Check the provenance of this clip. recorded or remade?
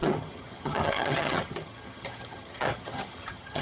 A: remade